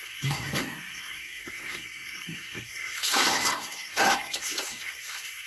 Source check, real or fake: fake